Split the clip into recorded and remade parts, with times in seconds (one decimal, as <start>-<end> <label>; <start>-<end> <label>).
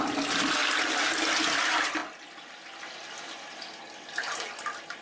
0.0-5.0 recorded